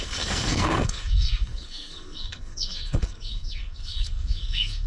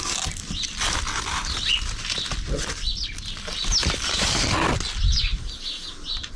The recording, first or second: second